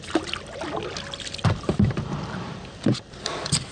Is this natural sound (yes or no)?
yes